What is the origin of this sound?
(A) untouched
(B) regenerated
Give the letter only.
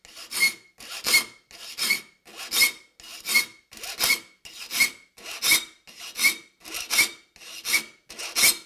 A